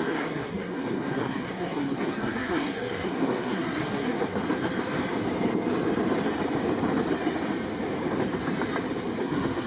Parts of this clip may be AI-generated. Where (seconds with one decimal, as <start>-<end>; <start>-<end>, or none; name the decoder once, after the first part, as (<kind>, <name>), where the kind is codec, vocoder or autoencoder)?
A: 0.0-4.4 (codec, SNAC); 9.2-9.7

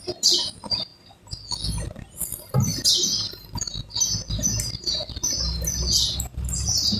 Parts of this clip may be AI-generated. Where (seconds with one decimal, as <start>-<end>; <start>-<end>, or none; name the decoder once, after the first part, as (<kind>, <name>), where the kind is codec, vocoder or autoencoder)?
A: none

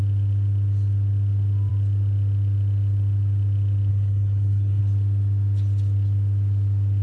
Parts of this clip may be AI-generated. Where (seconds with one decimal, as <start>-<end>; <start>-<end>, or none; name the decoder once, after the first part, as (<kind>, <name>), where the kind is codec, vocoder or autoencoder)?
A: 3.9-4.8 (codec, HILCodec)